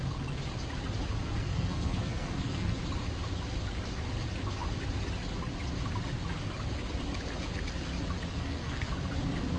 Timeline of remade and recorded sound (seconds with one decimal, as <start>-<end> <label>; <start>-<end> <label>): 0.0-1.2 recorded; 1.2-2.8 remade; 2.8-8.3 recorded; 8.3-8.9 remade; 8.9-9.6 recorded